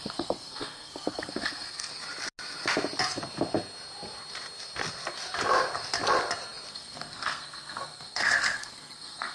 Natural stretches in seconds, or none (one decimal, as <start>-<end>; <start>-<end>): 1.9-6.7